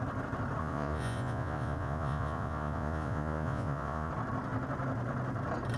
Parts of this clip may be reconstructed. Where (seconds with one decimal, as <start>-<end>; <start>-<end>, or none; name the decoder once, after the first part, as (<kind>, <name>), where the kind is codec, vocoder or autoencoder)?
0.6-4.1 (vocoder, Vocos)